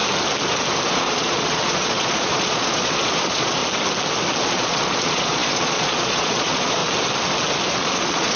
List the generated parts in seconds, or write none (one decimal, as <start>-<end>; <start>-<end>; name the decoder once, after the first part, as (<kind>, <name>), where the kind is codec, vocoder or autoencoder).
0.9-3.6 (vocoder, Vocos); 4.4-6.8; 7.7-8.4